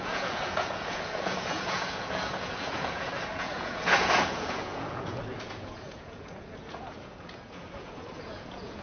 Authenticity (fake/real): fake